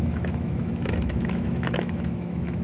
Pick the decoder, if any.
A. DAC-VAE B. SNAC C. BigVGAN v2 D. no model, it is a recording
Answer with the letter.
A